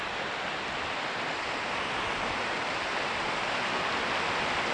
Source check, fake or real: real